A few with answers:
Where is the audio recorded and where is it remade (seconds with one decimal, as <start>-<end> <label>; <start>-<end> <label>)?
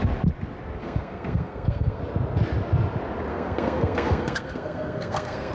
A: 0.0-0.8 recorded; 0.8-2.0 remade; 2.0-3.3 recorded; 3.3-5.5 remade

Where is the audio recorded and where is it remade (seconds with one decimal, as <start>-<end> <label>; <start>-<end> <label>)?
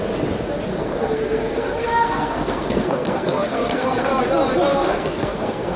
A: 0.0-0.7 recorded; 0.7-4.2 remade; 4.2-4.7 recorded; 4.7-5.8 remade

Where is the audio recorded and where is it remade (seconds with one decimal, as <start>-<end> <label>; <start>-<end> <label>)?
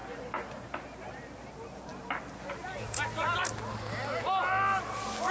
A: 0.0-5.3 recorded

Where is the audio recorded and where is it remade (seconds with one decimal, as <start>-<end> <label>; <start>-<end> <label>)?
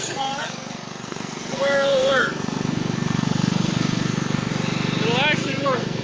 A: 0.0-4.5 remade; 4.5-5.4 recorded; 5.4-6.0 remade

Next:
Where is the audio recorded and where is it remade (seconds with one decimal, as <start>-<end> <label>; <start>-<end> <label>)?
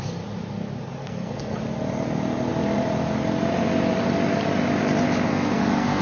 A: 0.0-1.0 recorded; 1.0-1.6 remade; 1.6-5.3 recorded; 5.3-6.0 remade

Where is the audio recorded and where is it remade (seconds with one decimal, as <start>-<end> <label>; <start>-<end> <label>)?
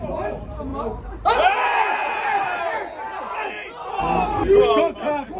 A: 0.0-5.4 recorded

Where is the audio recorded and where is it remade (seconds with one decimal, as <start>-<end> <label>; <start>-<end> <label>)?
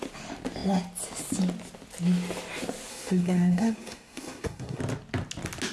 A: 0.0-2.9 recorded; 2.9-4.8 remade; 4.8-5.7 recorded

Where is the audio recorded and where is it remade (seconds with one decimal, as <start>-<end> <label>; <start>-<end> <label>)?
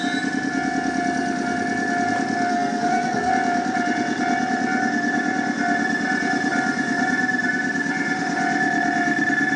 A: 0.0-2.5 recorded; 2.5-3.3 remade; 3.3-9.6 recorded